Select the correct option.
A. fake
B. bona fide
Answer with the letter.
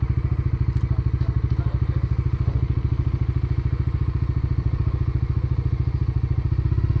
B